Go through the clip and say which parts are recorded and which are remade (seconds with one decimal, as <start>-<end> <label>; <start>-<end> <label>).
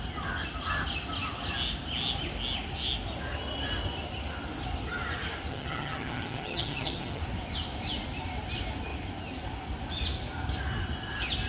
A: 0.0-5.5 recorded; 5.5-7.2 remade; 7.2-11.5 recorded